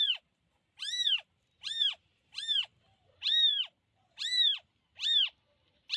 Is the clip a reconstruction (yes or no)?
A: yes